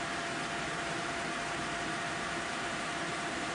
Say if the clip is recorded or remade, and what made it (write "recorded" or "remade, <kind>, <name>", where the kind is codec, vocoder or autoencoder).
remade, vocoder, BigVGAN v2